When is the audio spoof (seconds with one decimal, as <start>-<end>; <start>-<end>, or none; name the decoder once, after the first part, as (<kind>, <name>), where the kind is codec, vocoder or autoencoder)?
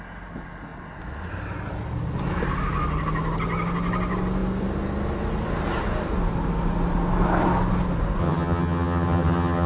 8.2-9.7 (vocoder, HiFi-GAN)